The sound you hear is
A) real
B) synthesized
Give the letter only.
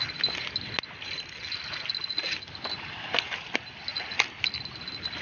A